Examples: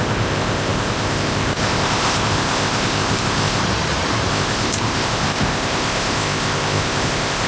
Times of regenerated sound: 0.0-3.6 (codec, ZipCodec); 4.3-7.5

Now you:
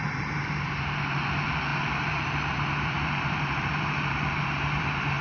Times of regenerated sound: 0.0-5.2 (vocoder, BigVGAN v2)